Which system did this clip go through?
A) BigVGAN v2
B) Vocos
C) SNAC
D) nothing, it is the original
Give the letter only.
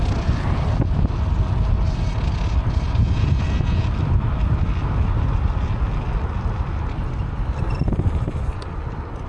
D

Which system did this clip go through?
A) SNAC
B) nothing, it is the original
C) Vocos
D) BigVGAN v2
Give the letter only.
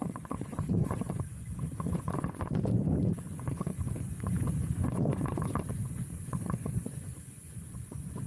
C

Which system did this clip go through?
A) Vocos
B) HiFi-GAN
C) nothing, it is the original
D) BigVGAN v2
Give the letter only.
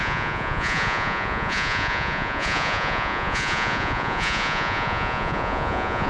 A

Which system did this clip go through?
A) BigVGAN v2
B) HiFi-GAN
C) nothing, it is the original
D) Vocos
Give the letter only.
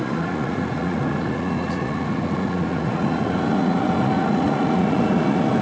D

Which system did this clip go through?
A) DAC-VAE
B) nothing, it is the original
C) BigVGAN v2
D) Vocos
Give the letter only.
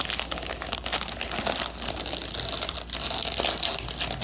B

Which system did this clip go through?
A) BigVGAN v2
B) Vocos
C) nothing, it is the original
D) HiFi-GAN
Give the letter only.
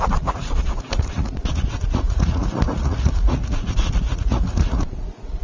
B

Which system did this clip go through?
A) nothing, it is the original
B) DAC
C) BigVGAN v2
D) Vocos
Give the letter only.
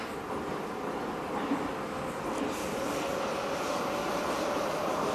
A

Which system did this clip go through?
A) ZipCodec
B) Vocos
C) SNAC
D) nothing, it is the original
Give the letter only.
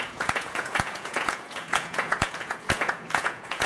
B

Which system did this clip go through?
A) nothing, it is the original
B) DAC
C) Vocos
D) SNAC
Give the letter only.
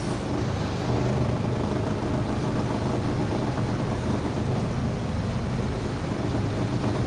A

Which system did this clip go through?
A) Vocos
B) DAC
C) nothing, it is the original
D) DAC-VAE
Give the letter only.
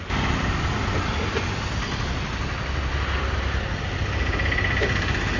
C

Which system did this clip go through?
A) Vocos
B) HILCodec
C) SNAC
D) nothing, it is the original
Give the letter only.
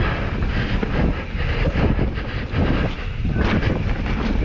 D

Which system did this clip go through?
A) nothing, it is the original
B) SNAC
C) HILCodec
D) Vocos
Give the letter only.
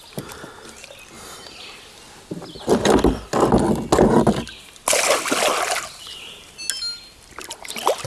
A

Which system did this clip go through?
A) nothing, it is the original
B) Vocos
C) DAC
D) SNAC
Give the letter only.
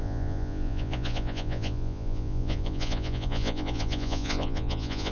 B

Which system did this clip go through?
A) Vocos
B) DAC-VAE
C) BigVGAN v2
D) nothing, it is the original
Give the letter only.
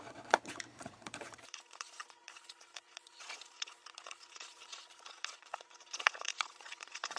A